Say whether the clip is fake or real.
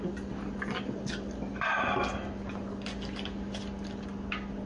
real